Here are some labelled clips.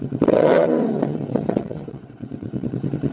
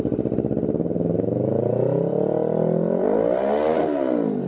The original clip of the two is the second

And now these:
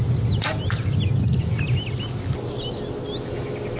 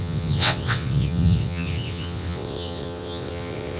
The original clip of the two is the first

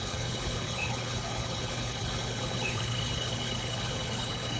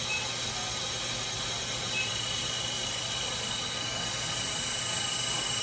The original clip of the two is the second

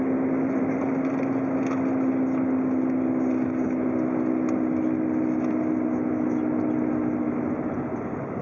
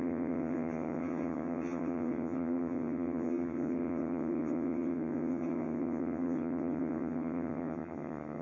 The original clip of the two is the first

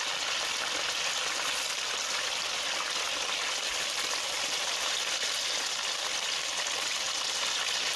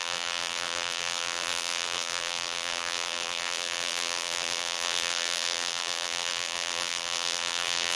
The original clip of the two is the first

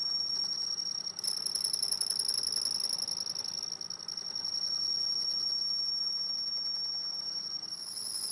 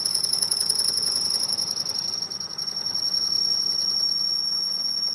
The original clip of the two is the first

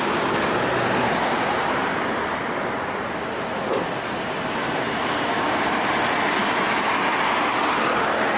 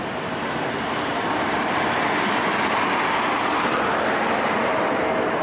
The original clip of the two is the first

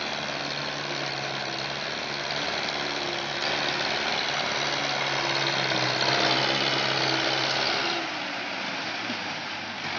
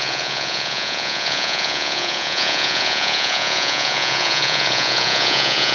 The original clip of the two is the first